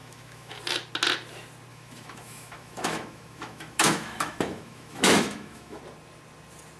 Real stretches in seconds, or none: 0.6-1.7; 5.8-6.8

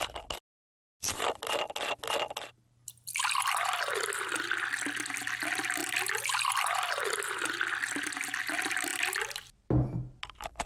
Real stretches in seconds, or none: 0.0-10.7

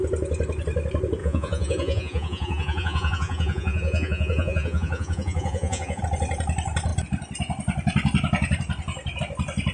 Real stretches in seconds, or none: 0.0-1.2; 6.0-9.7